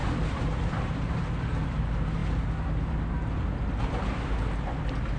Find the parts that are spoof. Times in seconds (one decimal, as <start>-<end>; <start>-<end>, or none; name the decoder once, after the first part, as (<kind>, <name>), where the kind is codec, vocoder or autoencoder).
0.0-1.1 (vocoder, BigVGAN v2)

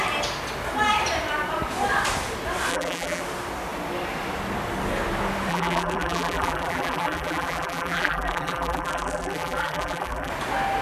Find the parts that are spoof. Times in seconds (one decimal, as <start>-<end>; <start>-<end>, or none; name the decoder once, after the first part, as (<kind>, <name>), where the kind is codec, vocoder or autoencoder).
2.7-3.2 (vocoder, BigVGAN v2); 5.5-10.3

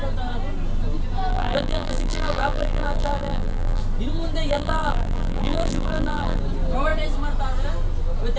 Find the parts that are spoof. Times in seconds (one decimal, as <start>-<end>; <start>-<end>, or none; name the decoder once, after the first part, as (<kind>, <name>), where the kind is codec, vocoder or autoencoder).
1.3-3.8 (vocoder, BigVGAN v2); 4.5-6.4

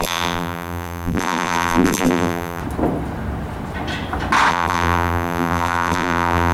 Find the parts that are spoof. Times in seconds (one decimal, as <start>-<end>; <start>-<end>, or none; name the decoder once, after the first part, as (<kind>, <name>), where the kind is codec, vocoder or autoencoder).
0.0-2.6 (vocoder, BigVGAN v2); 4.5-6.5

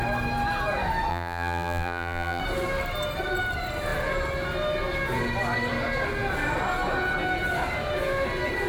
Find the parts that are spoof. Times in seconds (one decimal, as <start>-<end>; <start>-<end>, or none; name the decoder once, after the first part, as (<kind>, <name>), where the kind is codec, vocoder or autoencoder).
1.1-2.4 (vocoder, BigVGAN v2)

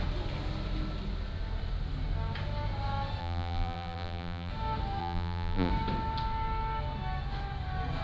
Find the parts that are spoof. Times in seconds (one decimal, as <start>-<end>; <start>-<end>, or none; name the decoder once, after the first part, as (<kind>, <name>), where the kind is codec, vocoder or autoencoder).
3.2-4.5 (vocoder, BigVGAN v2); 5.0-5.7